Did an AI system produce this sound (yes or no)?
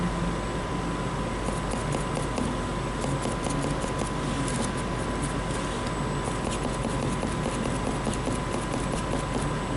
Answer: no